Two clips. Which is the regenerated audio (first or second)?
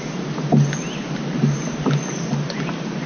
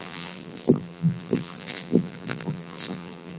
second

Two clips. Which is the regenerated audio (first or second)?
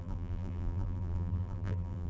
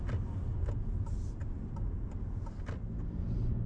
first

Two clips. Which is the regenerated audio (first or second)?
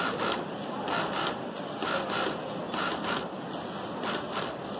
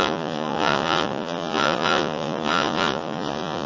second